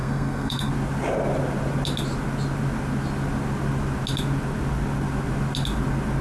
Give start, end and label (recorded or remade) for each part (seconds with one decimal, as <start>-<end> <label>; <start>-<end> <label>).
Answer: 0.0-0.7 remade; 0.7-6.2 recorded